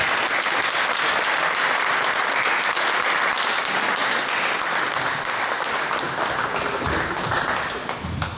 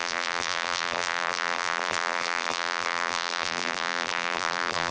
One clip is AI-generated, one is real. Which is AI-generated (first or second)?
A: second